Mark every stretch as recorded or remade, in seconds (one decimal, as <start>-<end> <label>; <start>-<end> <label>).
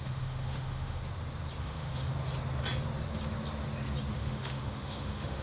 0.0-1.0 remade; 1.0-1.6 recorded; 1.6-2.1 remade; 2.1-4.1 recorded; 4.1-5.4 remade